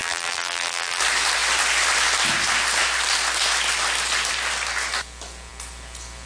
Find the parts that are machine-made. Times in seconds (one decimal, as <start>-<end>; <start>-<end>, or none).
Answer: 0.0-1.0

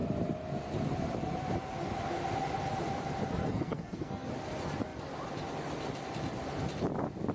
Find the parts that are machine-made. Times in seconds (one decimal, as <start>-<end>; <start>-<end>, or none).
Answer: 3.4-4.3

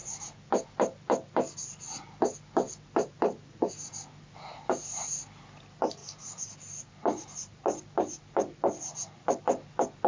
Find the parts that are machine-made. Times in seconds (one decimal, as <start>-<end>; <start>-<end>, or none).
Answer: 6.0-9.4

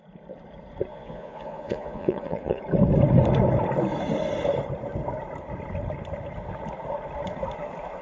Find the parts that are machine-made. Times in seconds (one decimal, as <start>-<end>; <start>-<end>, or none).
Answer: 0.9-2.6

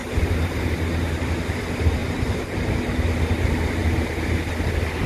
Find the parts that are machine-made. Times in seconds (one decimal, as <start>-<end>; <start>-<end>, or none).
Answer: 0.0-1.5; 2.0-3.0; 3.8-4.5

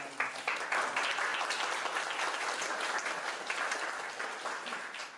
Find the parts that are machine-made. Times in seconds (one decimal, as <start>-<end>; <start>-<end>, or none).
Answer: none